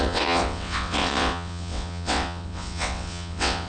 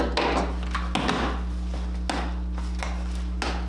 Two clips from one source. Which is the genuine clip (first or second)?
second